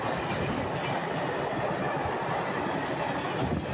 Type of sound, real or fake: real